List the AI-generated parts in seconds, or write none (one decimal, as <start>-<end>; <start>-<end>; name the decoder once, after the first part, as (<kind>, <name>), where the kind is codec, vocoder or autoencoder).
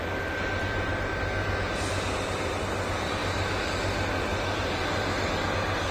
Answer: none